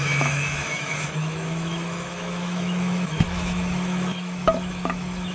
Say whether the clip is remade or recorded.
remade